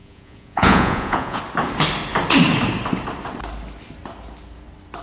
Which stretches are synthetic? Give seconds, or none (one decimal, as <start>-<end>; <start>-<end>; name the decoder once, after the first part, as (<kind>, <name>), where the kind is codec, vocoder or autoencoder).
0.0-1.4 (vocoder, Vocos)